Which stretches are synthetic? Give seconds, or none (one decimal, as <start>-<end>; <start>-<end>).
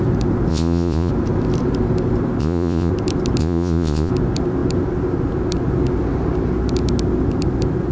0.5-1.1; 2.4-2.9; 3.4-4.1